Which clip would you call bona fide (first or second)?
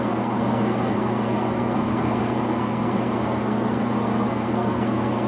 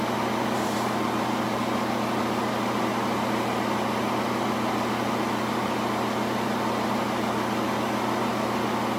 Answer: second